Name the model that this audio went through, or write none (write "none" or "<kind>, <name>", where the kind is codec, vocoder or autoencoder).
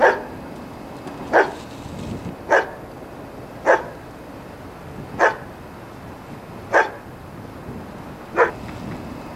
none